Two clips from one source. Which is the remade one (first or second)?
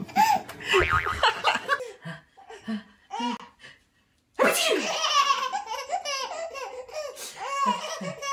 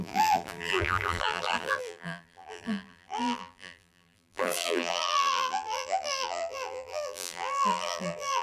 second